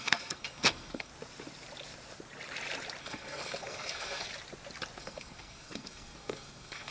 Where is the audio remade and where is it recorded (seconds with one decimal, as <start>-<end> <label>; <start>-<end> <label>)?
0.0-1.1 remade; 1.1-3.0 recorded; 3.0-4.3 remade; 4.3-5.0 recorded; 5.0-6.9 remade